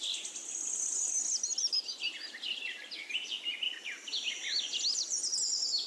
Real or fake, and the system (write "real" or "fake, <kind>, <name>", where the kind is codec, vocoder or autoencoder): real